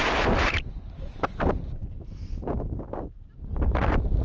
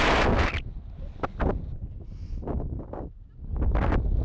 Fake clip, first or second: first